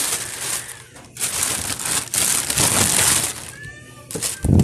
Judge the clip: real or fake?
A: real